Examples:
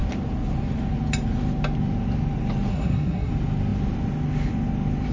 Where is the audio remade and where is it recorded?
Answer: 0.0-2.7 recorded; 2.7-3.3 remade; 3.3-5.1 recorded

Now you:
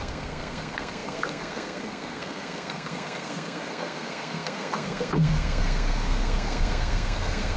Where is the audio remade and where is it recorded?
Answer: 0.0-7.6 remade

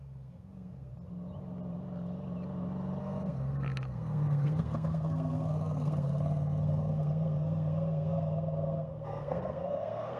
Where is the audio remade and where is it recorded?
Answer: 0.0-0.9 remade; 0.9-3.0 recorded; 3.0-10.2 remade